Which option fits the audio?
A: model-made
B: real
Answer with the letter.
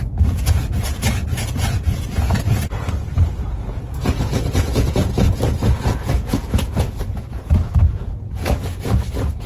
A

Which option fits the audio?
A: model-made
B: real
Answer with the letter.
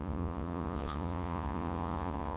A